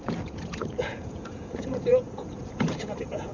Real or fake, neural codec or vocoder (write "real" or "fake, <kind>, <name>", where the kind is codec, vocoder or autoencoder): fake, vocoder, Vocos